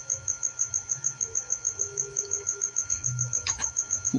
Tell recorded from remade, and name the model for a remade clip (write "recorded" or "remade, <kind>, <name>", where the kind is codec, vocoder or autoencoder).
remade, autoencoder, DAC-VAE